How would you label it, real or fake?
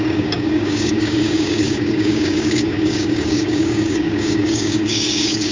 fake